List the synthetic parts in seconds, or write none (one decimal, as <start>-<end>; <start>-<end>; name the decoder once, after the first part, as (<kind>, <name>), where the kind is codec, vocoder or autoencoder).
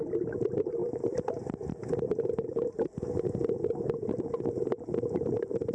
0.8-1.4 (vocoder, BigVGAN v2)